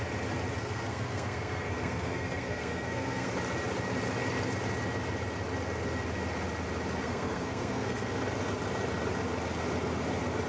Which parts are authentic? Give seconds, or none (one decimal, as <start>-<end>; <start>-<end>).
0.0-0.6; 3.3-7.0; 8.2-10.5